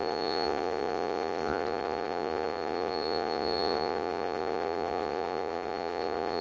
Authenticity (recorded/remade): remade